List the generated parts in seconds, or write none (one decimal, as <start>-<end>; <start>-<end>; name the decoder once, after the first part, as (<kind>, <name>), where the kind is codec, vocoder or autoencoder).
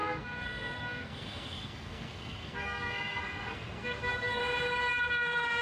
0.0-4.4 (codec, SNAC); 4.9-5.6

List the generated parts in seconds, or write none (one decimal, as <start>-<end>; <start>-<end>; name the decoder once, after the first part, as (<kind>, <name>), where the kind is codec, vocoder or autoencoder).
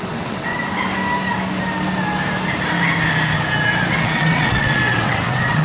0.0-0.5 (vocoder, WaveNeXt); 3.9-5.6